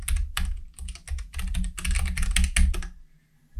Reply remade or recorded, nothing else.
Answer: recorded